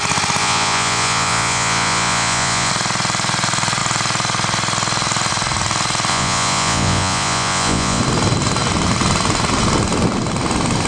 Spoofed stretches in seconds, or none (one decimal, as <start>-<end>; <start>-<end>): 0.4-2.7; 6.1-8.0